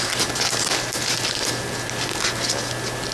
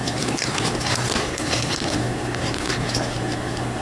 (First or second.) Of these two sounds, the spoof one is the second